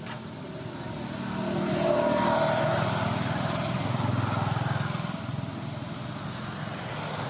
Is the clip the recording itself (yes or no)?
yes